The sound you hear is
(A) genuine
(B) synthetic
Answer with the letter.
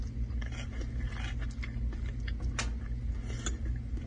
A